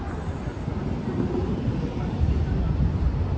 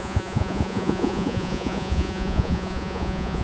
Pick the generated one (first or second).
second